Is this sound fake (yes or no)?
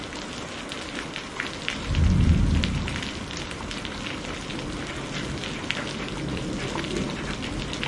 no